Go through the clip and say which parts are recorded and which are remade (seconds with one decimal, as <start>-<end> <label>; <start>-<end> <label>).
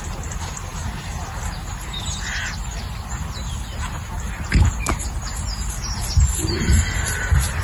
0.0-7.6 recorded